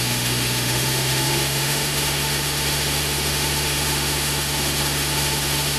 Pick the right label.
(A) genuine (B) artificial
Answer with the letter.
B